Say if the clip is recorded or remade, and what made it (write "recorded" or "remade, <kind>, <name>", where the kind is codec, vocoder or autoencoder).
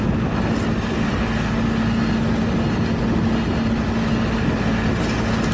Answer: recorded